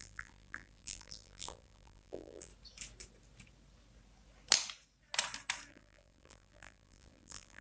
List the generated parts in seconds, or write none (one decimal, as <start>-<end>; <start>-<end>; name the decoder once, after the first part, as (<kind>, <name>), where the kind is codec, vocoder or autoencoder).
0.0-2.5 (vocoder, BigVGAN v2); 5.7-7.6